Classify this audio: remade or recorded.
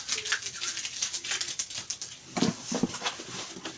recorded